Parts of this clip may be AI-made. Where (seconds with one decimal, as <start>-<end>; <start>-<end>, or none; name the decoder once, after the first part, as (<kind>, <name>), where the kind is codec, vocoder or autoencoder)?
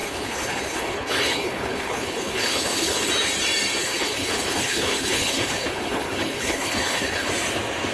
0.0-3.1 (codec, HILCodec); 3.8-7.3